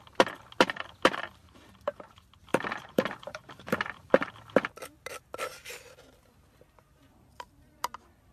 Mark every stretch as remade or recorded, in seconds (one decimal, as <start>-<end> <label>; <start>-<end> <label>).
0.0-1.4 recorded; 1.4-2.1 remade; 2.1-2.5 recorded; 2.5-4.3 remade; 4.3-8.3 recorded